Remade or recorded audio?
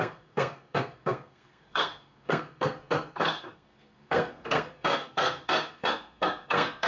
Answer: remade